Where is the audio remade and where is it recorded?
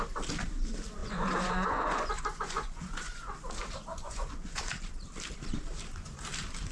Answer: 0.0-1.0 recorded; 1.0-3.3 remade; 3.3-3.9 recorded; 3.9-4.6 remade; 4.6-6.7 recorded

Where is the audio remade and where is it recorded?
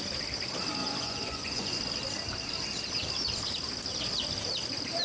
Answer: 0.0-0.8 recorded; 0.8-1.8 remade; 1.8-5.0 recorded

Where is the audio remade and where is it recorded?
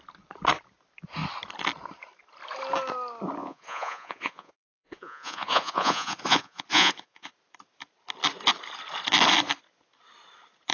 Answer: 0.0-3.4 recorded; 3.4-7.3 remade; 7.3-10.7 recorded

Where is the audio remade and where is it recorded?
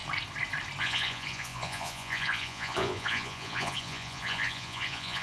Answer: 0.0-0.8 recorded; 0.8-5.2 remade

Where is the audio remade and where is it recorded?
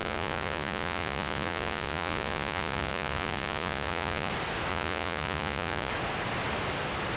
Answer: 0.0-4.3 remade; 4.3-4.7 recorded; 4.7-5.9 remade; 5.9-7.2 recorded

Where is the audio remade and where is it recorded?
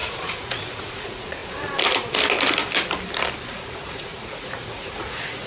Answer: 0.0-1.4 remade; 1.4-3.5 recorded; 3.5-5.5 remade